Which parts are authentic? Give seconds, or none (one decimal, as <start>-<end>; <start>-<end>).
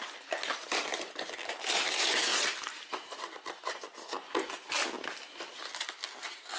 0.0-6.6